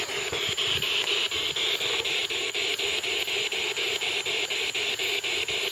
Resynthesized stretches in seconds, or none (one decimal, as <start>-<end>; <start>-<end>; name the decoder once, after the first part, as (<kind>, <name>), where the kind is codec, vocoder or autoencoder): 2.2-3.1 (vocoder, BigVGAN v2)